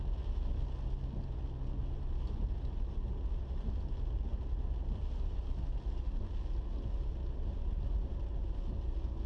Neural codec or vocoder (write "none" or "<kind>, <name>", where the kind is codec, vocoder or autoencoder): none